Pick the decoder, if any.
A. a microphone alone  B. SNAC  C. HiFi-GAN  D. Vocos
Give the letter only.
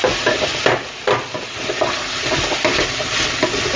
A